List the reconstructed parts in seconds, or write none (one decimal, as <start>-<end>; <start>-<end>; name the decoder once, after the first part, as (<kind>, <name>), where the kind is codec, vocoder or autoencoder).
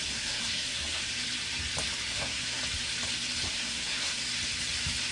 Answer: 0.0-1.0 (codec, SNAC); 2.1-2.6; 3.5-4.2